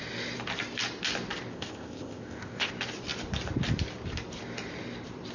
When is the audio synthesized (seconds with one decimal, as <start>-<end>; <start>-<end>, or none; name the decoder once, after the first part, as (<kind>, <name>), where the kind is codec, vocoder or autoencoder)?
1.5-2.7 (codec, ZipCodec)